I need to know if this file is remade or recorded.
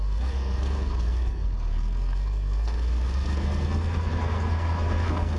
remade